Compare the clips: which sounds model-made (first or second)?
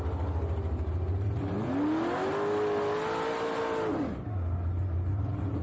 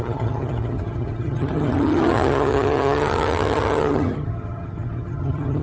second